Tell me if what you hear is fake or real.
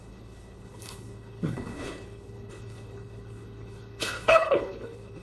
fake